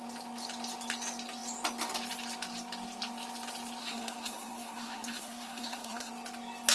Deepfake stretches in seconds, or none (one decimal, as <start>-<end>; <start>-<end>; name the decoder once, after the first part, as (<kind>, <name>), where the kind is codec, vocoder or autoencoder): 3.8-6.1 (codec, SNAC)